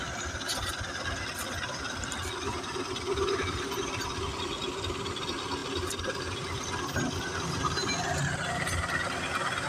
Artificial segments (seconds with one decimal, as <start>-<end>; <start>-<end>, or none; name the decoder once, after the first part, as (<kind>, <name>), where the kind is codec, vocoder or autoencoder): none